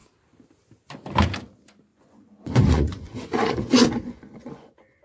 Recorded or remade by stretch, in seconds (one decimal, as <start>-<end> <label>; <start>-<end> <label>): 0.0-1.9 recorded; 1.9-5.0 remade